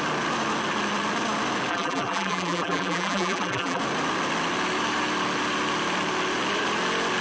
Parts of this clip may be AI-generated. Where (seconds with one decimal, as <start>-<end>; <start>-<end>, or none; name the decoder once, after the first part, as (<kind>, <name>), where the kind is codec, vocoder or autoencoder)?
1.7-3.8 (vocoder, BigVGAN v2)